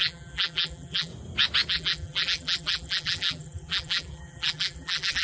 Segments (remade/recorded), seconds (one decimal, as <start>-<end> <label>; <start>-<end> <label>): 0.0-1.1 remade; 1.1-1.7 recorded; 1.7-5.2 remade